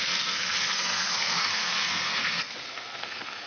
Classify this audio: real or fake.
fake